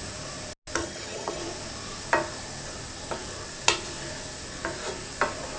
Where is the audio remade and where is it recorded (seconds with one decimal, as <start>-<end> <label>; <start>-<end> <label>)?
0.0-0.8 recorded; 0.8-1.4 remade; 1.4-5.6 recorded